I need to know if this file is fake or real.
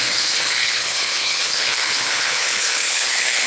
fake